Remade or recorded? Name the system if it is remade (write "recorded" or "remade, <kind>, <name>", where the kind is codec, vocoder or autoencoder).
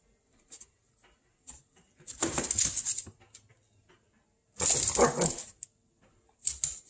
recorded